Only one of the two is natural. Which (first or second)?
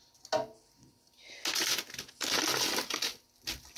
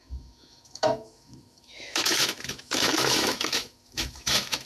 first